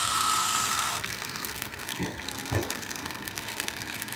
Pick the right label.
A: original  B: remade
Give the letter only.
B